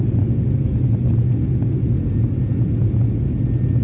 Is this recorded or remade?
recorded